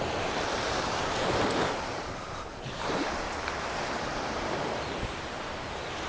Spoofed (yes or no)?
yes